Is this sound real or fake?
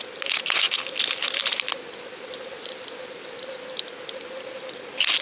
real